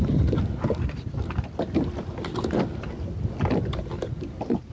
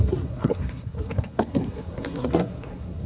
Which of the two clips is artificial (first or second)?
second